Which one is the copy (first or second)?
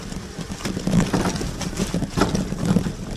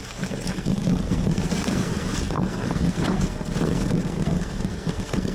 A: second